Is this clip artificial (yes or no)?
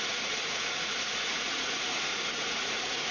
yes